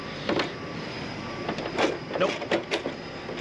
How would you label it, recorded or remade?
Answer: recorded